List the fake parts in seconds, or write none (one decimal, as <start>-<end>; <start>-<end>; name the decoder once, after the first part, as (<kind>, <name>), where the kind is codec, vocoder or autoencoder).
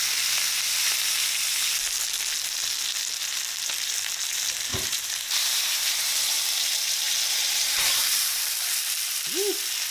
4.7-8.4 (vocoder, BigVGAN v2)